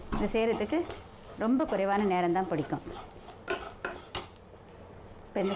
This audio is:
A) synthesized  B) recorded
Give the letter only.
B